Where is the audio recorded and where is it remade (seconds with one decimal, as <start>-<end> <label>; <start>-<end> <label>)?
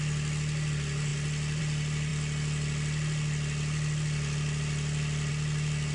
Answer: 0.0-5.9 recorded